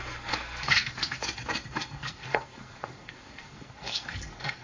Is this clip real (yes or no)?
no